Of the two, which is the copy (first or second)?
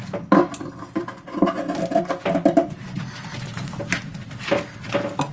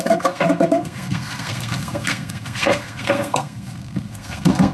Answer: second